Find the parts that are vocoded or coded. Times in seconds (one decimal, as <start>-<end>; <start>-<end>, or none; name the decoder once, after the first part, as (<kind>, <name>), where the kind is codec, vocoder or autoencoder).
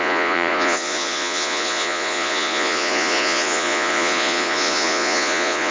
0.0-5.7 (vocoder, Vocos)